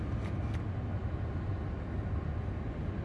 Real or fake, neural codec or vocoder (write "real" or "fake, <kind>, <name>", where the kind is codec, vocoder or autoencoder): real